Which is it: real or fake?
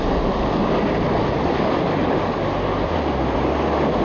real